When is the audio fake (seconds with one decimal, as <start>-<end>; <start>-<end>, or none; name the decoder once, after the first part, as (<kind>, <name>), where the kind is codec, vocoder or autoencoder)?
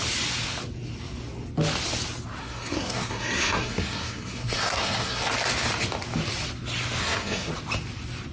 2.4-5.3 (codec, SNAC); 7.0-7.5